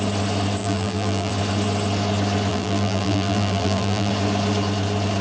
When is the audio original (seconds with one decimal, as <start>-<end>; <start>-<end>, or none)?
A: 0.0-0.6; 1.3-2.5; 4.1-5.2

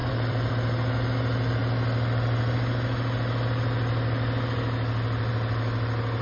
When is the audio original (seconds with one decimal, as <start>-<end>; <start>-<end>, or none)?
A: 0.5-6.2

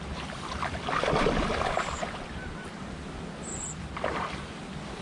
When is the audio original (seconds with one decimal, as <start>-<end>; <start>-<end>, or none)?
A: 0.0-0.6; 2.9-3.5

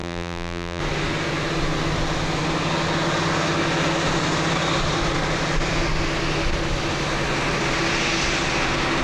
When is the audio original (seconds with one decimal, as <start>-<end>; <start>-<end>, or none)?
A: 0.8-9.0

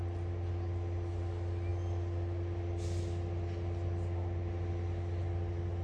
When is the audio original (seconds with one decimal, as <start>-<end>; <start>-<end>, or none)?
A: 0.0-5.8